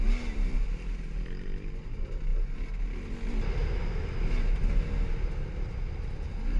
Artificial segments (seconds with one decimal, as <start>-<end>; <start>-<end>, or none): none